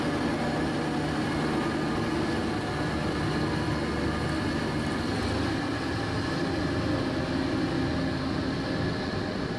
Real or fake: real